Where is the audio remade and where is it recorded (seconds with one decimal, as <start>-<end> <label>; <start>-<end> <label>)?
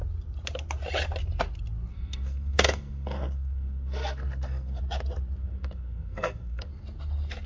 0.0-1.9 recorded; 1.9-4.8 remade; 4.8-5.4 recorded; 5.4-6.7 remade; 6.7-7.5 recorded